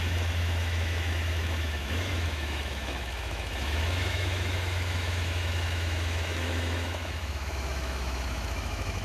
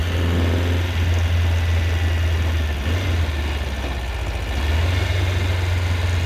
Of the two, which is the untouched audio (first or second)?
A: second